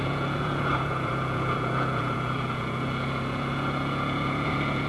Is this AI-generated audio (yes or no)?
yes